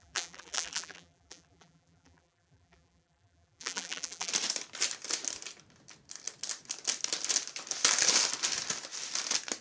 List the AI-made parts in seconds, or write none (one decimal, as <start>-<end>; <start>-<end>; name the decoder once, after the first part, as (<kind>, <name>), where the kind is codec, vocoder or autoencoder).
0.0-4.3 (vocoder, BigVGAN v2)